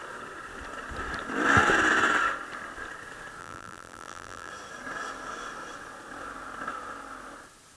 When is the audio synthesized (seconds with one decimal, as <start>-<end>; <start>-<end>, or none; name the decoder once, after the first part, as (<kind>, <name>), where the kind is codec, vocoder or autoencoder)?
3.4-4.5 (vocoder, BigVGAN v2)